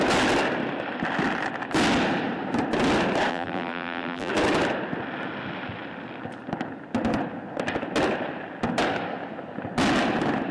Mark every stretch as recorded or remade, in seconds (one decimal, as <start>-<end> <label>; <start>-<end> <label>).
0.0-3.3 recorded; 3.3-4.3 remade; 4.3-10.5 recorded